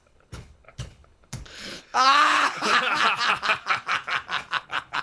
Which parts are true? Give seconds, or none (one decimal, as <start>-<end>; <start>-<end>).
2.8-4.6